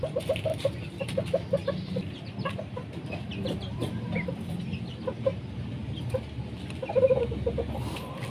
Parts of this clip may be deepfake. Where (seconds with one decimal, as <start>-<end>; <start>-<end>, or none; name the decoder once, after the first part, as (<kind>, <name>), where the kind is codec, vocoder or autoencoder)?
0.5-5.0 (vocoder, BigVGAN v2)